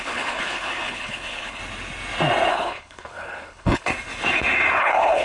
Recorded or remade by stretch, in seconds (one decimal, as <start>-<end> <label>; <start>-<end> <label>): 0.0-1.6 remade; 1.6-2.5 recorded; 2.5-3.9 remade; 3.9-4.8 recorded; 4.8-5.2 remade